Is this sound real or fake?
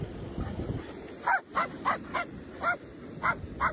fake